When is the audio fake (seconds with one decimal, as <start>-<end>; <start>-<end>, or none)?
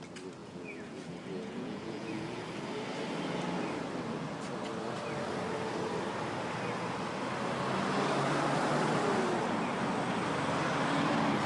0.4-2.4